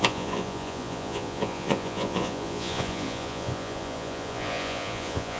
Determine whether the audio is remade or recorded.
remade